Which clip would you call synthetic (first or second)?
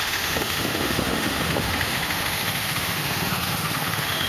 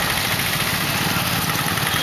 first